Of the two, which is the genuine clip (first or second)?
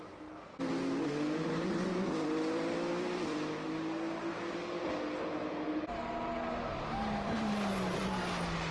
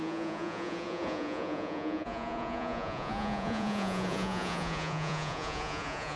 first